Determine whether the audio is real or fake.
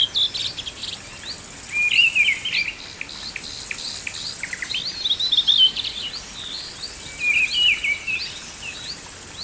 real